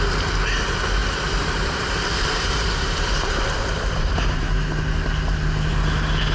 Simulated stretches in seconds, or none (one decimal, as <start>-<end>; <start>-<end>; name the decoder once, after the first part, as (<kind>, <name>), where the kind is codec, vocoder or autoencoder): 1.0-4.5 (vocoder, BigVGAN v2)